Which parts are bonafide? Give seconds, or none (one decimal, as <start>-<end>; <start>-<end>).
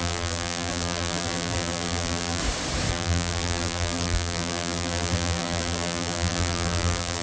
2.4-2.9